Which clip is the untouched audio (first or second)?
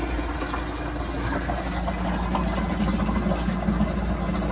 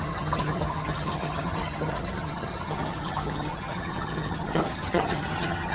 first